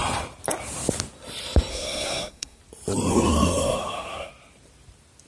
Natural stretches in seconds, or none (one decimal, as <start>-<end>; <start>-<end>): 0.0-1.7; 2.6-3.1; 4.3-5.3